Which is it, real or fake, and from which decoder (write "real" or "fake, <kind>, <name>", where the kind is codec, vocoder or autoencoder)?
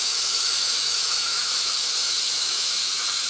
fake, autoencoder, DAC-VAE